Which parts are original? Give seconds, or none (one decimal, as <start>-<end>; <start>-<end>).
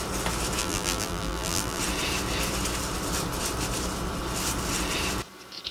0.0-0.6; 1.8-5.7